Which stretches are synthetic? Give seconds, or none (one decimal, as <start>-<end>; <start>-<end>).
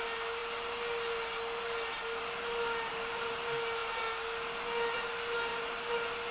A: none